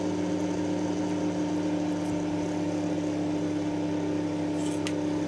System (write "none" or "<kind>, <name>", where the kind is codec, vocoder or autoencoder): none